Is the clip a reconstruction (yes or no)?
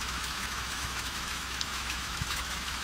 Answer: yes